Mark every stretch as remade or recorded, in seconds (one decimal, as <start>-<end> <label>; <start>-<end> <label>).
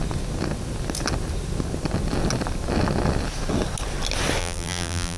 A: 0.0-4.4 recorded; 4.4-5.2 remade